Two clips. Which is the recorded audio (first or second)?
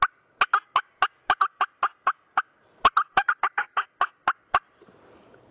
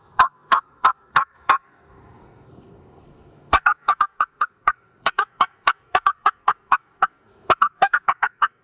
first